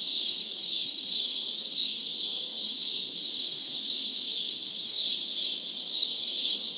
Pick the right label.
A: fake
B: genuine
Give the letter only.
A